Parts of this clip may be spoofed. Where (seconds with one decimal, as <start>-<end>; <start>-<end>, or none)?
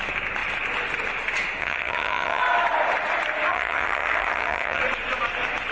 1.6-2.4; 3.5-4.8